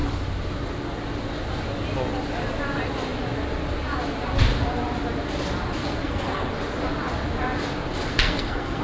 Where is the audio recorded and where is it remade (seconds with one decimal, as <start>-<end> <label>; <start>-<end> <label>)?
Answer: 0.0-5.8 recorded; 5.8-6.5 remade; 6.5-8.1 recorded; 8.1-8.8 remade